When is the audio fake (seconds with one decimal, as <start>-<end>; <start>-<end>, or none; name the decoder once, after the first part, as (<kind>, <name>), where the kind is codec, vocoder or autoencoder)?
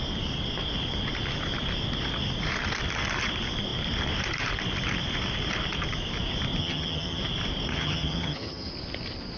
6.6-7.2 (vocoder, HiFi-GAN); 7.7-8.7